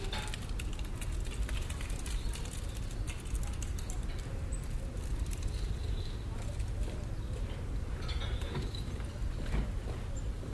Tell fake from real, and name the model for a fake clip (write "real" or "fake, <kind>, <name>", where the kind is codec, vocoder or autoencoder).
real